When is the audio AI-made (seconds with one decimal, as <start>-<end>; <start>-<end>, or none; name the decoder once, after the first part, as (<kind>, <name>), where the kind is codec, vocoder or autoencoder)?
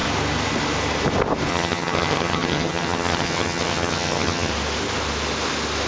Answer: 1.5-4.5 (vocoder, HiFi-GAN)